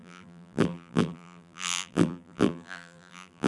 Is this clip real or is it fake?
fake